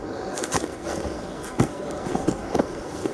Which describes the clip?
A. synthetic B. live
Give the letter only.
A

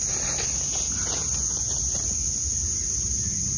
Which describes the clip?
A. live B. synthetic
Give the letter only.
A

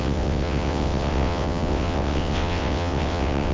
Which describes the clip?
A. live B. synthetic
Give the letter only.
B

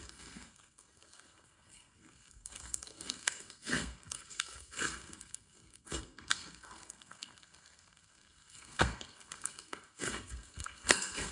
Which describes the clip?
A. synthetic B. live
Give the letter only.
A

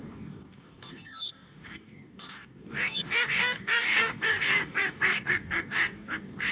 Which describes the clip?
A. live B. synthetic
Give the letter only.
B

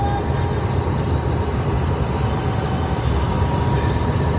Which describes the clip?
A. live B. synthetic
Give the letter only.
A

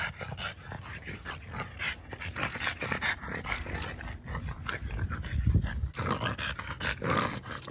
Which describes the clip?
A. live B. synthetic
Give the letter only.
A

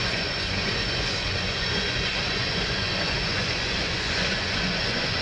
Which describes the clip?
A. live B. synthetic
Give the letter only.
B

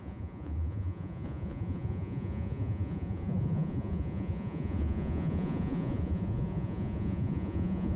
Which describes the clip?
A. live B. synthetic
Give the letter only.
B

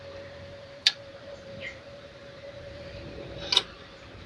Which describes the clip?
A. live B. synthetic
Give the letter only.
B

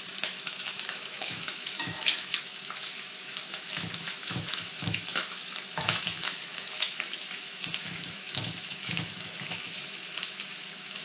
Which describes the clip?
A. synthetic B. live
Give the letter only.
A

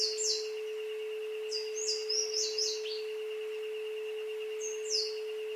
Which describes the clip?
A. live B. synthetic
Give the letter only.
A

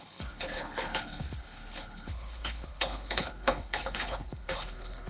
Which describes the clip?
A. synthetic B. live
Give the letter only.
A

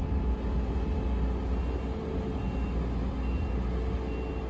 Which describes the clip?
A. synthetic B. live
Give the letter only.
B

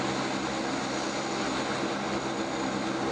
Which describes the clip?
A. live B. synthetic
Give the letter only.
A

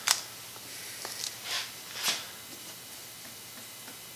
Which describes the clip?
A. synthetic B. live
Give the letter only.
B